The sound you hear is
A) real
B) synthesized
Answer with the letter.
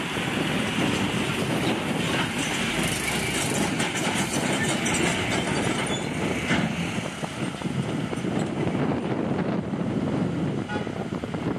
A